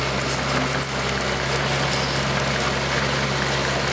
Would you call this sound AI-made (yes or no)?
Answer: no